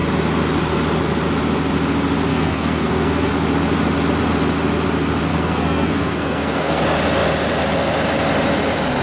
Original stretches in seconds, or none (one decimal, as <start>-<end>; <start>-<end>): 0.0-2.3; 3.3-5.3; 6.8-9.0